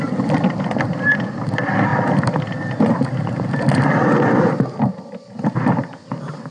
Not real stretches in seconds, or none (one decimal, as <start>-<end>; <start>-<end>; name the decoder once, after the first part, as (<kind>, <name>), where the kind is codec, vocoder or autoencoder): none